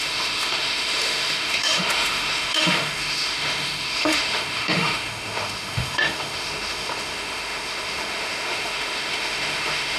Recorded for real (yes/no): no